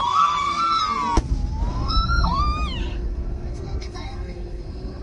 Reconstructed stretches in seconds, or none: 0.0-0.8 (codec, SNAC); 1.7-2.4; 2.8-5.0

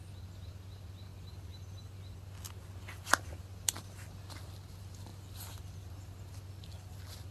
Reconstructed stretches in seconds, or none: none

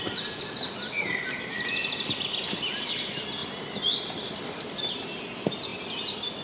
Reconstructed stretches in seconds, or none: 3.4-5.2 (vocoder, BigVGAN v2); 5.7-6.4

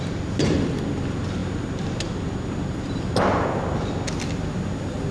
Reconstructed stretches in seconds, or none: none

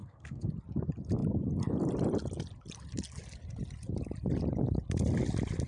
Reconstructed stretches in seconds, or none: 0.0-0.5 (codec, SNAC)

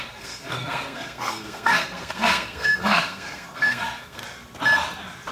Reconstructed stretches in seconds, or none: 0.0-4.2 (codec, SNAC)

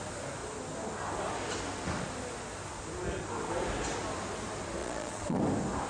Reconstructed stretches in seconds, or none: 4.8-5.4 (vocoder, Vocos)